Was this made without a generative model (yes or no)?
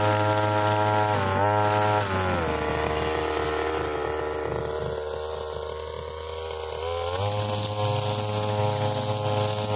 yes